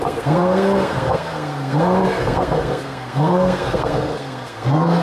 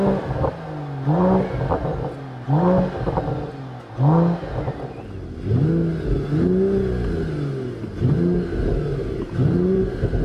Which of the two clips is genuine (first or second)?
second